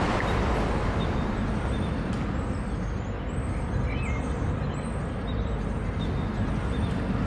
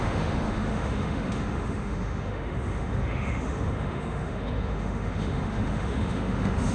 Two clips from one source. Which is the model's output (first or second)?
second